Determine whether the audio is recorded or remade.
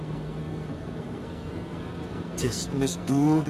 remade